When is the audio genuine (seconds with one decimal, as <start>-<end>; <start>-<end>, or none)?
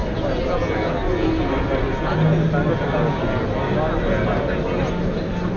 0.0-5.6